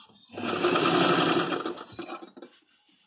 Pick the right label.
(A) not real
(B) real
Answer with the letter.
B